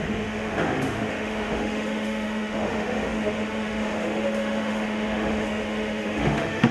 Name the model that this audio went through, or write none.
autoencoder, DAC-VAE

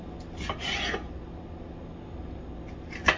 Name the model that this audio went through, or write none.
none